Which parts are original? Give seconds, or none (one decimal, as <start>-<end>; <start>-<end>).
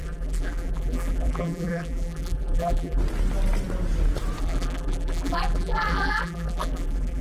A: 3.0-4.4